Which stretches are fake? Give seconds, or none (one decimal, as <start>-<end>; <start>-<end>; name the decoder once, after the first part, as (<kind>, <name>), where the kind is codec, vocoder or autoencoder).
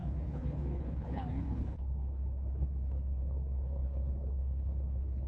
0.0-5.3 (codec, HILCodec)